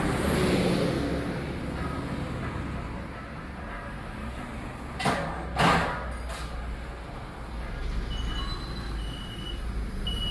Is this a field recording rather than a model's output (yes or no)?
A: yes